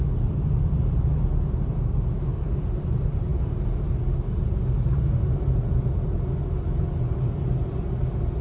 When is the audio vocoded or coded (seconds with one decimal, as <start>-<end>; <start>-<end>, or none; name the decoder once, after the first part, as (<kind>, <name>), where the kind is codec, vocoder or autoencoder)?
none